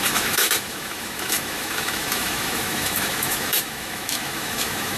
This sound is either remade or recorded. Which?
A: remade